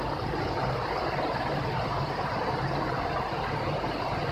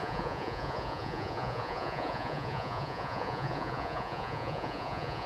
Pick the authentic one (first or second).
first